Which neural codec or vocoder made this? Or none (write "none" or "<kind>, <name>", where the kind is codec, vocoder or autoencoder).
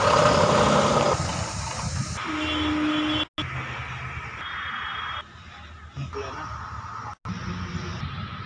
none